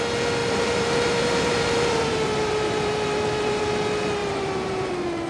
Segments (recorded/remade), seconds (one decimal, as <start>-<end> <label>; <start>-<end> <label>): 0.0-0.4 recorded; 0.4-3.6 remade; 3.6-4.2 recorded; 4.2-5.3 remade